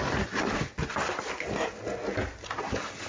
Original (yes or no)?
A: yes